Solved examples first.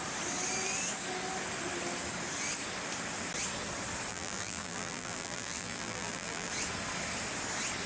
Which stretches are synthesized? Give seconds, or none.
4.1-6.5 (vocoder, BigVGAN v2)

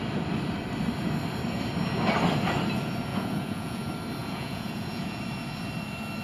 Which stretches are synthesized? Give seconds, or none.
3.1-3.8 (vocoder, Vocos); 4.2-5.2